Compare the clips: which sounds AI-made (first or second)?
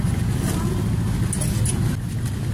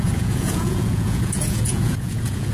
second